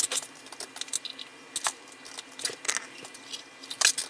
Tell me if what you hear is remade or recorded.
recorded